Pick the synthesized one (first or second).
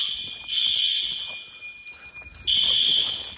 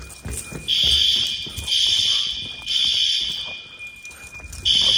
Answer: second